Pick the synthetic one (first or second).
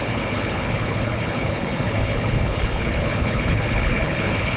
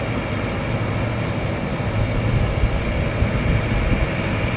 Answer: first